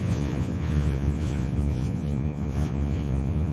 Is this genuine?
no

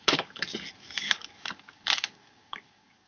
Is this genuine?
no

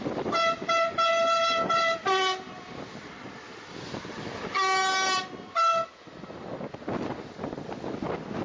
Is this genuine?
yes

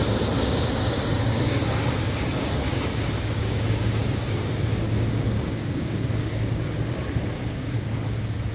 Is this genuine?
no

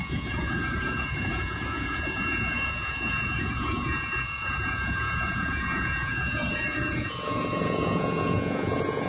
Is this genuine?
no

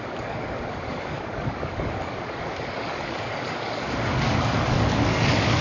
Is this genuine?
no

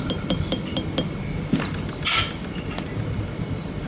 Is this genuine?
yes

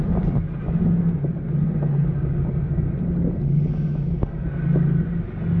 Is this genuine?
yes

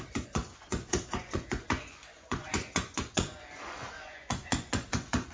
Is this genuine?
no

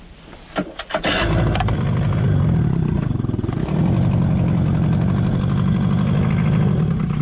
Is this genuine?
yes